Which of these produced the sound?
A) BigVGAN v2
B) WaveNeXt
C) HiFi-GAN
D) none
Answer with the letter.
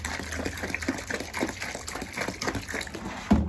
D